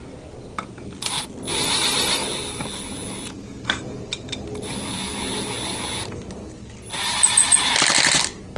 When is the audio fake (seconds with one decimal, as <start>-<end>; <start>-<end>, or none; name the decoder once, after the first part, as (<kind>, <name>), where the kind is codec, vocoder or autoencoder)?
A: 2.2-4.7 (vocoder, BigVGAN v2)